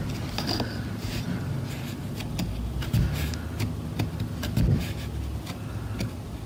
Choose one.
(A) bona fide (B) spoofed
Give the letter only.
A